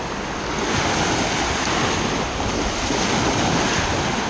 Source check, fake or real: real